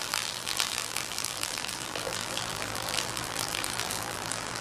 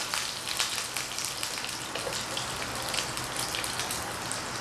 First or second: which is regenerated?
first